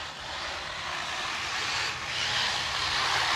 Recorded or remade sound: recorded